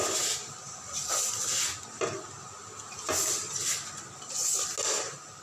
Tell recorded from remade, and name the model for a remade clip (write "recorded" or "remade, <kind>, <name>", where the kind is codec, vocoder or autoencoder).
recorded